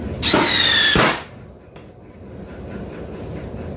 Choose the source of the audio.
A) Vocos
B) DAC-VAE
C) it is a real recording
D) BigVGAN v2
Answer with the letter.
C